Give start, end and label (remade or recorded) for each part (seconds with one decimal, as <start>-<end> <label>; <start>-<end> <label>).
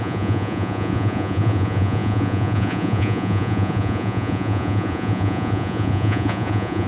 0.0-6.9 remade